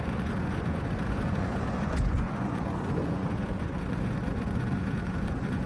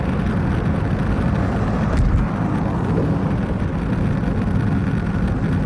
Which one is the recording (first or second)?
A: second